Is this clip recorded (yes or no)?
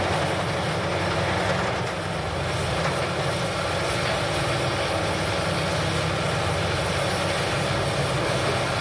yes